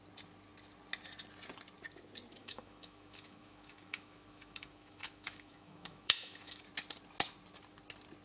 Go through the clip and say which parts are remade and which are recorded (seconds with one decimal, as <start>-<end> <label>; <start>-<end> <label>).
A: 0.0-2.4 recorded; 2.4-6.6 remade; 6.6-8.2 recorded